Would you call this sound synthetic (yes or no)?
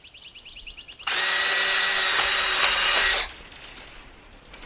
no